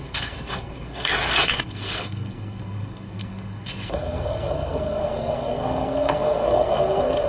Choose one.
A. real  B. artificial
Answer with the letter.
B